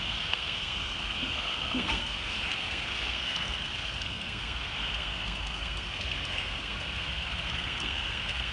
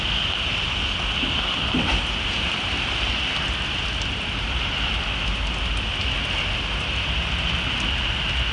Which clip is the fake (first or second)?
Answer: first